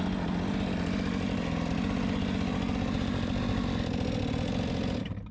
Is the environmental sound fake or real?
real